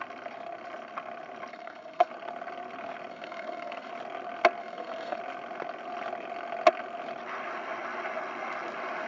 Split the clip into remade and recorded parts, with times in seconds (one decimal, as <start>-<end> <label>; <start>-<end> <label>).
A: 0.0-1.5 recorded; 1.5-2.1 remade; 2.1-3.1 recorded; 3.1-3.9 remade; 3.9-4.6 recorded; 4.6-5.2 remade; 5.2-9.1 recorded